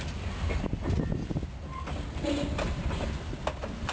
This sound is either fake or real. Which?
real